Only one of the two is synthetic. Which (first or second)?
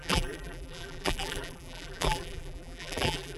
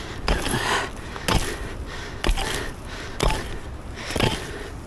first